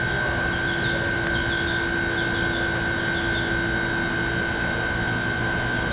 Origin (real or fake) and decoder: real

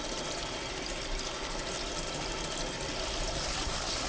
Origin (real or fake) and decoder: real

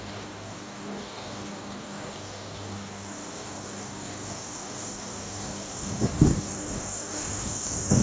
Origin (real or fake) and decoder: fake, codec, DAC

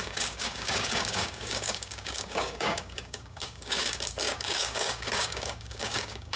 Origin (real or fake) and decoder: fake, codec, DAC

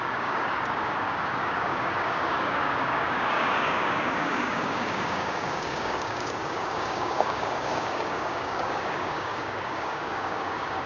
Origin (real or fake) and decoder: fake, codec, DAC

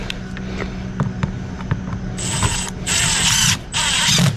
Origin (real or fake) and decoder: real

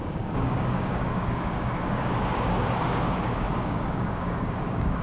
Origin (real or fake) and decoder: fake, codec, DAC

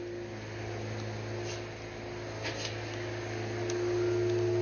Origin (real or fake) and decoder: real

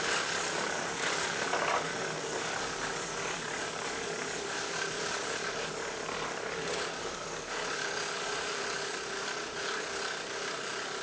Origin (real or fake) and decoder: fake, codec, DAC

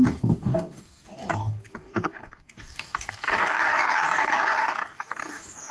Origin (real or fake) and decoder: fake, codec, DAC